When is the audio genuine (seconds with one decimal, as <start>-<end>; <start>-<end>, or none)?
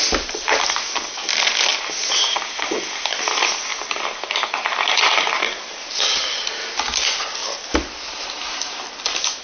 0.0-7.4; 9.0-9.4